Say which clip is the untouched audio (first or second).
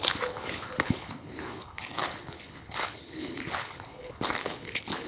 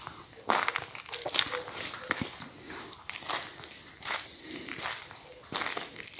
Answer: second